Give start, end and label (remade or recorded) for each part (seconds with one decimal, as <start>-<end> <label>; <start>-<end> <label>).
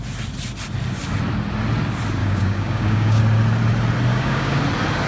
0.0-2.2 recorded; 2.2-3.2 remade; 3.2-4.1 recorded; 4.1-4.6 remade; 4.6-5.1 recorded